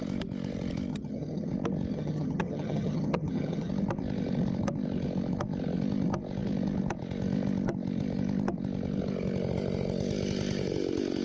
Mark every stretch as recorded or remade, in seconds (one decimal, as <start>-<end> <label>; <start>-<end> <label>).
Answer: 0.0-0.9 recorded; 0.9-1.5 remade; 1.5-1.9 recorded; 1.9-3.7 remade; 3.7-11.2 recorded